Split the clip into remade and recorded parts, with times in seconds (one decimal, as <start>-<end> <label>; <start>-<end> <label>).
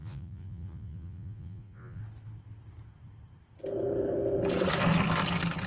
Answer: 0.0-2.0 remade; 2.0-5.7 recorded